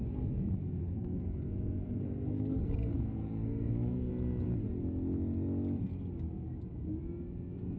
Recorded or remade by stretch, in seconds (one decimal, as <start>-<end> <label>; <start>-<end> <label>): 0.0-0.8 recorded; 0.8-4.1 remade; 4.1-7.8 recorded